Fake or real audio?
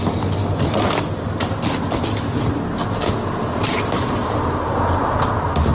real